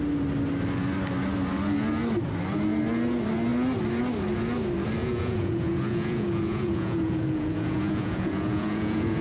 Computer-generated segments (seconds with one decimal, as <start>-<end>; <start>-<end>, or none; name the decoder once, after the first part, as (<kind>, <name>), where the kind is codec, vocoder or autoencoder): 5.0-9.2 (vocoder, Vocos)